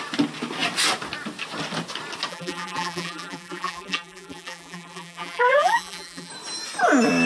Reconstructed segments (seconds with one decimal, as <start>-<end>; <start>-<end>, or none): 2.3-6.3